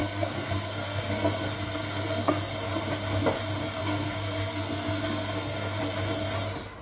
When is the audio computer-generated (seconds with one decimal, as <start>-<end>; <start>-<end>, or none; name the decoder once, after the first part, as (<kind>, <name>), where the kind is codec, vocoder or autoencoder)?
0.0-2.5 (codec, SNAC); 3.8-5.8